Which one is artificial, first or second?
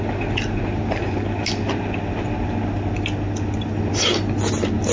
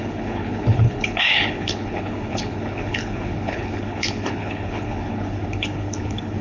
second